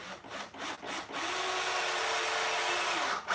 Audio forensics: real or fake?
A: real